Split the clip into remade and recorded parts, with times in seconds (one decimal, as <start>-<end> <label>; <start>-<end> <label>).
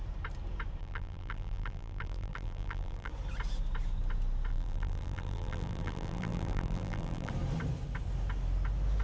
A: 0.0-0.8 recorded; 0.8-3.1 remade; 3.1-4.5 recorded; 4.5-7.3 remade; 7.3-9.0 recorded